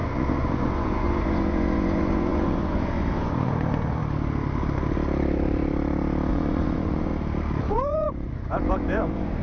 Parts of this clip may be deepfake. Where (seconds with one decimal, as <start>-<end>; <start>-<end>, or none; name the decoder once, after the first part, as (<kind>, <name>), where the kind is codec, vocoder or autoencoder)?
0.0-4.0 (vocoder, Vocos); 6.3-7.1; 7.7-9.4